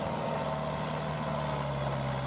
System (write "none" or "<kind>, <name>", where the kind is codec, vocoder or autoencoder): none